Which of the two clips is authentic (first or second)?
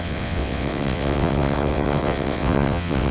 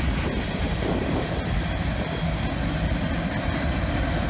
second